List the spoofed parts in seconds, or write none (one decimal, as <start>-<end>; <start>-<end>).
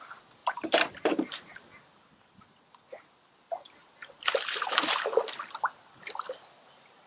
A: 0.4-1.9